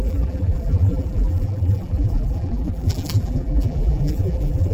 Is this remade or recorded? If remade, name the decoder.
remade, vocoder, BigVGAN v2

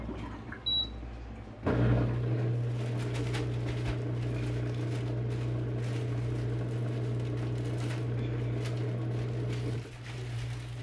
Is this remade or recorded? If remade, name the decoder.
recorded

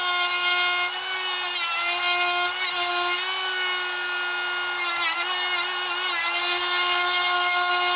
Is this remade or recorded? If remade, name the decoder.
recorded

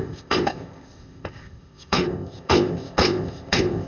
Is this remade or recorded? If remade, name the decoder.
remade, codec, ZipCodec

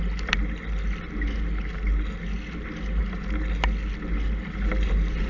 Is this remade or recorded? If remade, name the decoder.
recorded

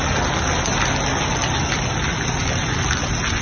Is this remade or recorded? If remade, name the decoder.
recorded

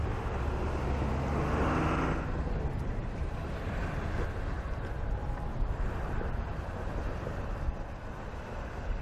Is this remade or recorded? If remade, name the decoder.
recorded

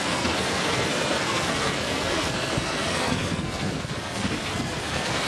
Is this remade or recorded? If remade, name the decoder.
remade, codec, SNAC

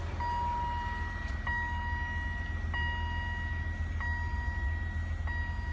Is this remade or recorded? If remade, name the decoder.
recorded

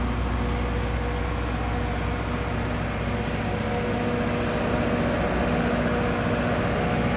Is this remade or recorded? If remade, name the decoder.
recorded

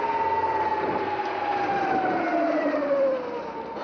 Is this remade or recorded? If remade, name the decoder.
recorded